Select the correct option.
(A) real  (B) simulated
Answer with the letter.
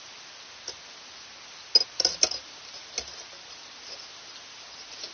A